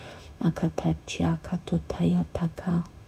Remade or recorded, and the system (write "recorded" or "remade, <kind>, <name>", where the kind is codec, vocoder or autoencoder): remade, autoencoder, DAC-VAE